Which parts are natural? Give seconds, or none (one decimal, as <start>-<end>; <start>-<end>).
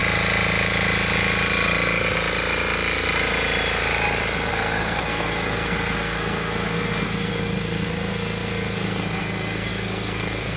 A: 0.0-4.5